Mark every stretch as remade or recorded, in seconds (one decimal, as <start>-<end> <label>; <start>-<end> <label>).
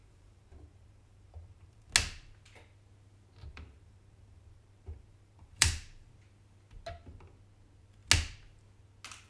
0.0-1.9 remade; 1.9-3.5 recorded; 3.5-6.1 remade; 6.1-9.3 recorded